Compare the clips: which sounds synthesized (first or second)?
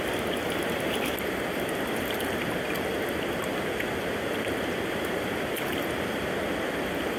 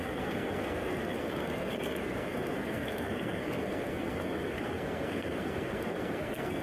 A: second